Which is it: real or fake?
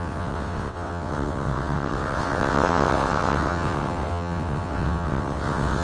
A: fake